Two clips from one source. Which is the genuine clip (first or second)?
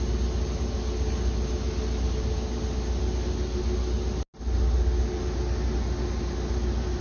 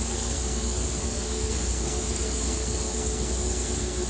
first